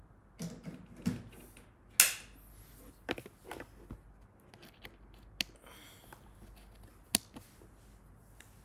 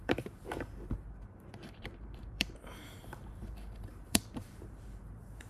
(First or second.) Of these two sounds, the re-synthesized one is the second